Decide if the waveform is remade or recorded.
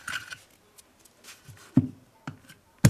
recorded